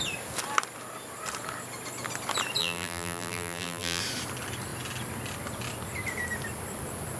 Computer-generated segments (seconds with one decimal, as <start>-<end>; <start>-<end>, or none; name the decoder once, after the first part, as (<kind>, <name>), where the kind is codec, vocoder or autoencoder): 2.6-4.0 (vocoder, BigVGAN v2)